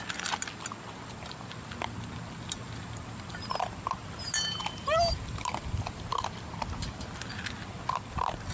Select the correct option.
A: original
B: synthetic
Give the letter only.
A